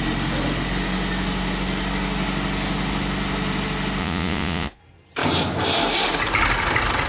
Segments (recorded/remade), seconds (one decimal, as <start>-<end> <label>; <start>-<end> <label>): 0.0-4.0 recorded; 4.0-4.8 remade; 4.8-7.1 recorded